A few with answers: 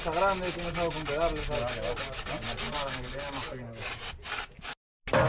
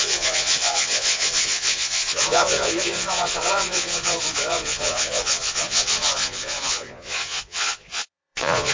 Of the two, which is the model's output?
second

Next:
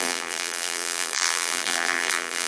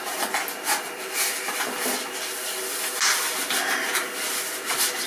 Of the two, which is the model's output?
first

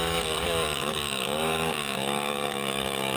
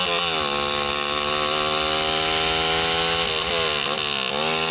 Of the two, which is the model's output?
first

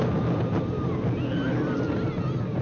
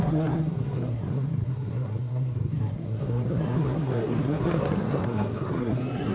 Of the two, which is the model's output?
second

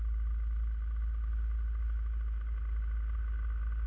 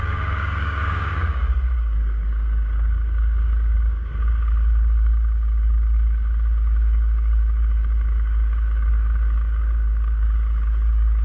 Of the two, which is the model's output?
second